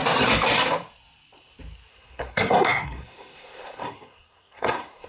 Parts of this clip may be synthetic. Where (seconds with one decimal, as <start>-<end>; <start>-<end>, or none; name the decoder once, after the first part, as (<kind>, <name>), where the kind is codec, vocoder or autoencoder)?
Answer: 1.9-5.1 (codec, SNAC)